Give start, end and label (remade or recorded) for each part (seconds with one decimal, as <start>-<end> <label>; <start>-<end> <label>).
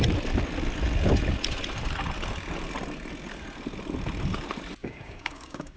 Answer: 0.0-4.8 recorded; 4.8-5.8 remade